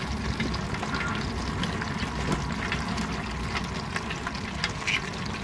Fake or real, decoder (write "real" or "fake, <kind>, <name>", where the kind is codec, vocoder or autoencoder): real